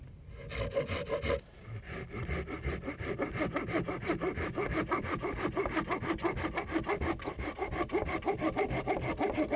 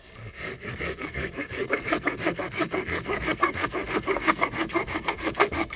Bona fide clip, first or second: first